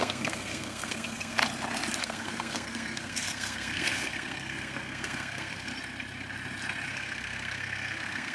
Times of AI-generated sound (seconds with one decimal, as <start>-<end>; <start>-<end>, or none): 0.0-1.4; 2.0-5.7; 6.9-8.3